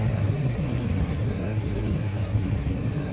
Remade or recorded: remade